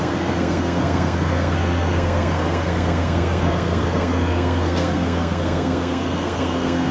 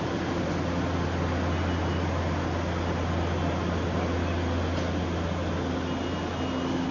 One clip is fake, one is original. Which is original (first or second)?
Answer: second